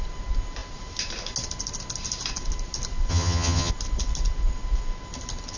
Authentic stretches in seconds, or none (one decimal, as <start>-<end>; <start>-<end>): 0.0-3.1; 3.7-5.6